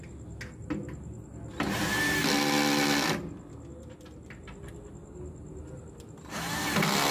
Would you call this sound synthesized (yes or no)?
no